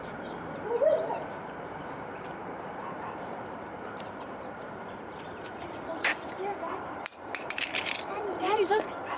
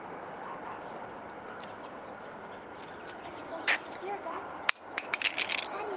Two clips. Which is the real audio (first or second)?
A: second